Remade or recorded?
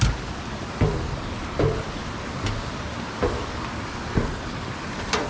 recorded